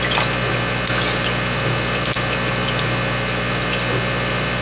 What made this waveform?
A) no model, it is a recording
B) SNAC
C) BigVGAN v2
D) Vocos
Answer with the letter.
A